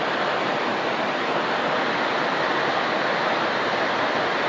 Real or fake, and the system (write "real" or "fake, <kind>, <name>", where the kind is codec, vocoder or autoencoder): real